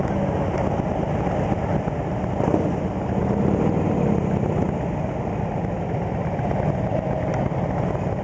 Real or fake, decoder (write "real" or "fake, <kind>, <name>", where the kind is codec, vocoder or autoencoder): real